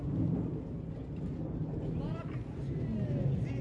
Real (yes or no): yes